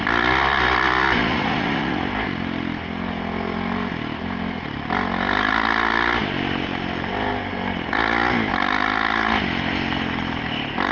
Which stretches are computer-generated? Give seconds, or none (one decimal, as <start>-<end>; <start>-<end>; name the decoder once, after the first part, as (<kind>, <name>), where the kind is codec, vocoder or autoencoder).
1.2-2.0 (vocoder, Vocos)